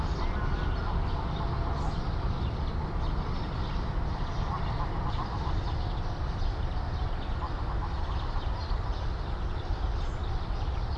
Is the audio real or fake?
real